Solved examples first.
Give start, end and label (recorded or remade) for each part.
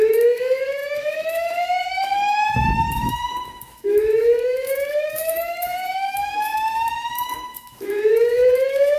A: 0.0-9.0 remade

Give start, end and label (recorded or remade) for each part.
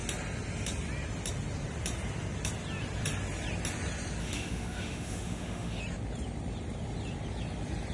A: 0.0-4.2 recorded; 4.2-5.8 remade; 5.8-7.9 recorded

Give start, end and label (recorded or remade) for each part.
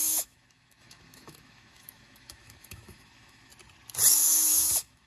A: 0.0-3.5 remade; 3.5-4.1 recorded; 4.1-5.1 remade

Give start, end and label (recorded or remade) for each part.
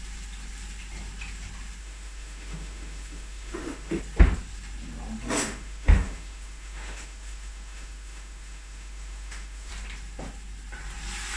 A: 0.0-1.8 recorded; 1.8-4.0 remade; 4.0-5.4 recorded; 5.4-9.7 remade; 9.7-11.4 recorded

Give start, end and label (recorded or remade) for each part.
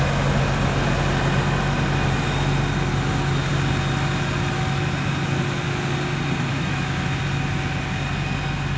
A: 0.0-6.5 recorded; 6.5-7.2 remade; 7.2-8.8 recorded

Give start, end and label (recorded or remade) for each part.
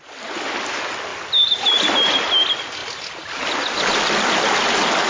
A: 0.0-5.1 recorded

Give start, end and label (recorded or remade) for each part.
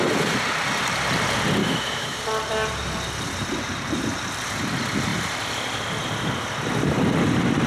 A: 0.0-1.6 recorded; 1.6-2.2 remade; 2.2-7.7 recorded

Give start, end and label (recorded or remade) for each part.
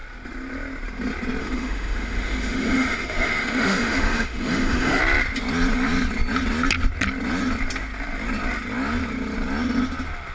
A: 0.0-1.4 recorded; 1.4-5.0 remade; 5.0-10.3 recorded